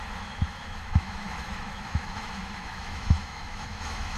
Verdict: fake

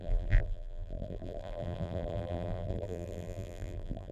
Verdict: fake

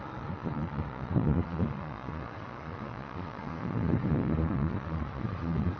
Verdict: fake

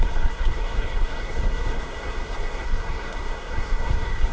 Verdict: fake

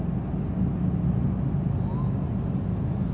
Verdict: real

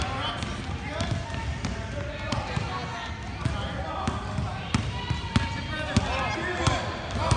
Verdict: real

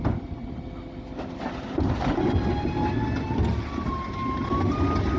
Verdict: real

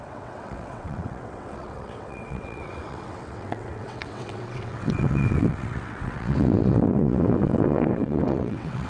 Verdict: fake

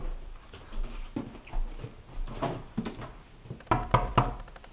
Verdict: real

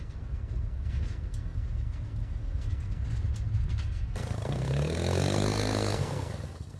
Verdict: fake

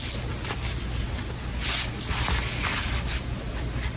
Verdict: real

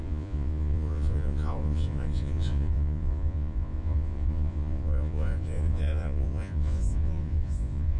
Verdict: fake